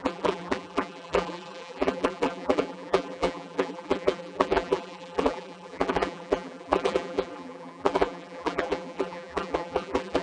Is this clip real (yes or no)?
no